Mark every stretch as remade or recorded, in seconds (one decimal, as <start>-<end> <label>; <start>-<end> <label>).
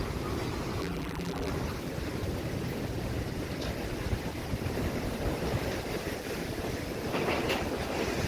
0.0-0.8 recorded; 0.8-1.5 remade; 1.5-8.3 recorded